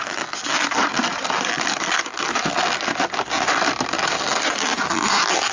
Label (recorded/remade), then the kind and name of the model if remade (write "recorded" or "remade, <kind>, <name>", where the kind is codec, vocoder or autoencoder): recorded